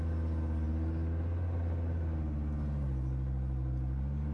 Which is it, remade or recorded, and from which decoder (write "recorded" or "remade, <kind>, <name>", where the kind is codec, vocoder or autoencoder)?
recorded